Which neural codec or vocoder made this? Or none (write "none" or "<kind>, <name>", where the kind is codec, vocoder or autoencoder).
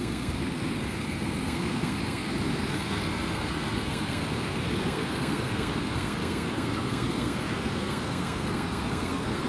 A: codec, SNAC